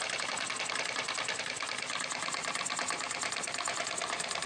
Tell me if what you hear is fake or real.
real